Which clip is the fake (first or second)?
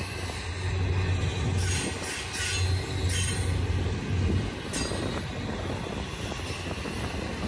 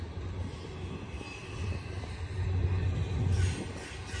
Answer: second